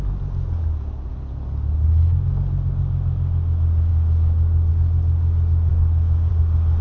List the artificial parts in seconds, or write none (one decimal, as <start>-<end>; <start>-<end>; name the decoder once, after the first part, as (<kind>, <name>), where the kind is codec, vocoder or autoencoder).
5.7-6.3 (autoencoder, DAC-VAE)